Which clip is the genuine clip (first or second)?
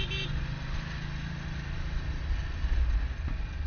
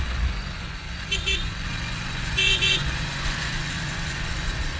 first